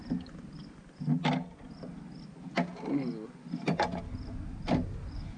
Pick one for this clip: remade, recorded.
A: recorded